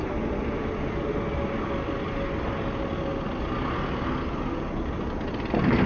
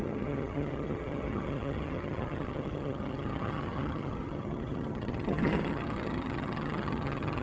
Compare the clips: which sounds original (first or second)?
first